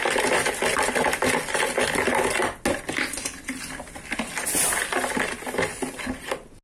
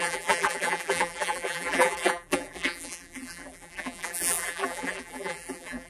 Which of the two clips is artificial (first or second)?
second